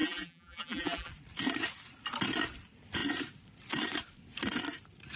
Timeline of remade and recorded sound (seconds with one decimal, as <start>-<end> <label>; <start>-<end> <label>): 0.0-1.1 remade; 1.1-5.2 recorded